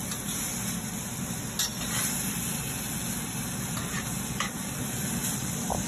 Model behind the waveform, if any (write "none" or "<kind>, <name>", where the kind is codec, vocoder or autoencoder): none